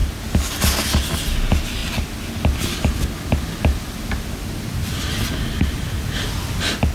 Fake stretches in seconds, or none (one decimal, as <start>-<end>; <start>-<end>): none